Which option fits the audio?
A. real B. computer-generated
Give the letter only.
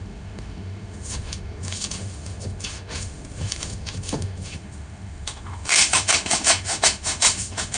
B